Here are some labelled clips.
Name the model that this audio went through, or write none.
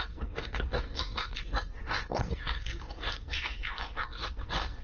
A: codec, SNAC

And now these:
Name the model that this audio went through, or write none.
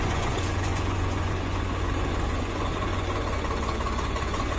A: vocoder, Vocos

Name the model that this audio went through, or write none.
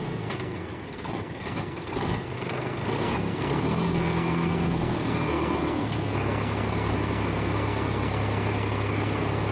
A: codec, SNAC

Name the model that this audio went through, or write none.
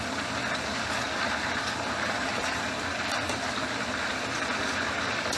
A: none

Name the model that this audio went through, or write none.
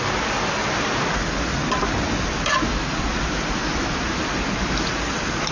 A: none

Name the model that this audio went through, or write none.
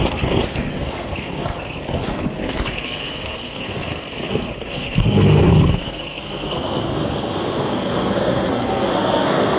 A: codec, SNAC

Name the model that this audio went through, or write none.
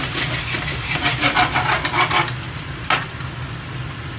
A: none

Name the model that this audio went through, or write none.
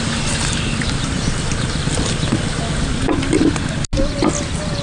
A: none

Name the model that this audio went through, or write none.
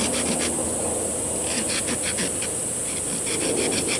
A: none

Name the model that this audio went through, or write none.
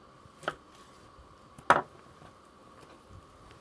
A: none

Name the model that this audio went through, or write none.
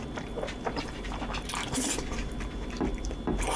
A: none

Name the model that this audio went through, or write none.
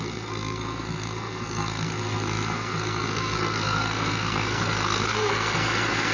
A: codec, SNAC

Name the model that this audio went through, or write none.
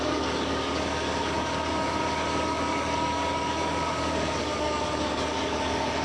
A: codec, DAC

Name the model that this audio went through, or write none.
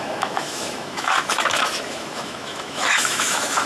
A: autoencoder, DAC-VAE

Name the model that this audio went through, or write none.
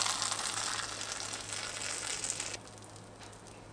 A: none